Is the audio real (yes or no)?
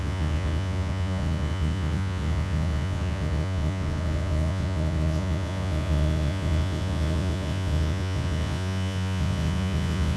no